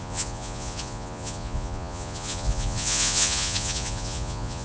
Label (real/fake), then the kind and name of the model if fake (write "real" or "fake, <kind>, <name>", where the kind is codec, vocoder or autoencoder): fake, vocoder, Vocos